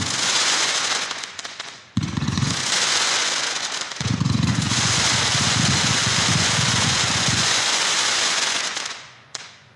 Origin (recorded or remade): remade